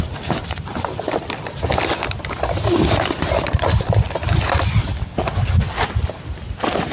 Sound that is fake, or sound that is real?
real